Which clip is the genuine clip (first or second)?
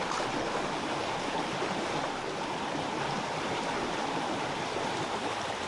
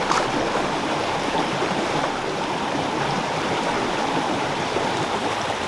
first